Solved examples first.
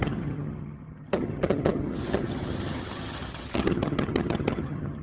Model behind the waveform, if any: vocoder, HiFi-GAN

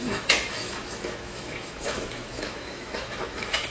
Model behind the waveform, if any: autoencoder, DAC-VAE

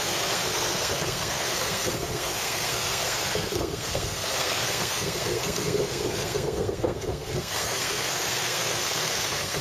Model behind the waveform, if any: codec, SNAC